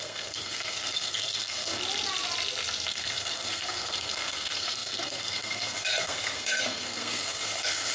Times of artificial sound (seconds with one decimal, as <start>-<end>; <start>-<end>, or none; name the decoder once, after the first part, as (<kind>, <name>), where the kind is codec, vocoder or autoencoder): 0.0-1.8 (codec, SNAC); 2.9-7.9